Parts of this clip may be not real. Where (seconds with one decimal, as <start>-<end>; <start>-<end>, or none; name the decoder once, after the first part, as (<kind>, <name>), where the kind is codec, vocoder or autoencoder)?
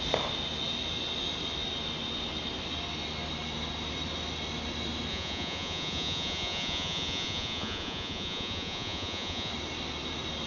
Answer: 5.1-9.5 (vocoder, Vocos)